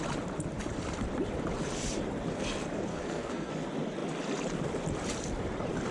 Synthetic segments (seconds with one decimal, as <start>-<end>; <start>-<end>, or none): 2.9-3.5